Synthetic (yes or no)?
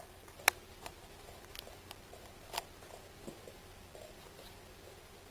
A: no